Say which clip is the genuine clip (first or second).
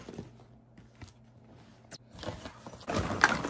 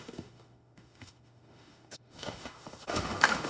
first